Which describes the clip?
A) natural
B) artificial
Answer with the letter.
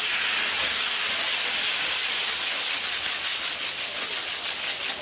A